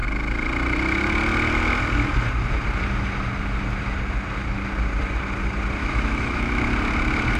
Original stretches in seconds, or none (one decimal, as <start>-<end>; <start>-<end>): 0.0-5.8; 6.6-7.4